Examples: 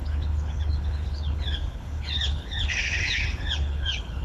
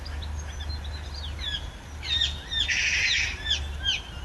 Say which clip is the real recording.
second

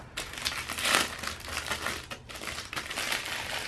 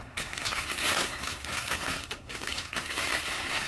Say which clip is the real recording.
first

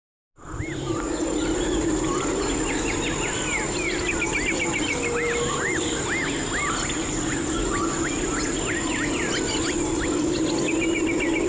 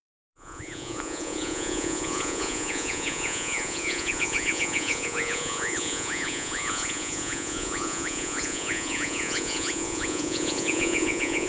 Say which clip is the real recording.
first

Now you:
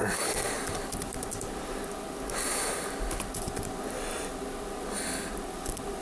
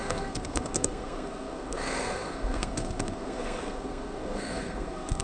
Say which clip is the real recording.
first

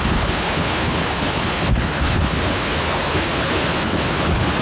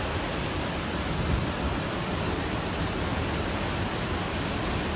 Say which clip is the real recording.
second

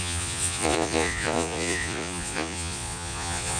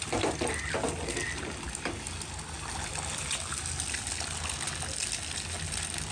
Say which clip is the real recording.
second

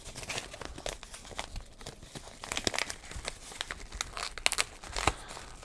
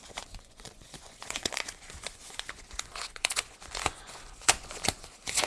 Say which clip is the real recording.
first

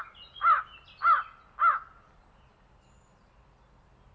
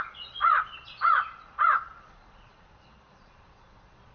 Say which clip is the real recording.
first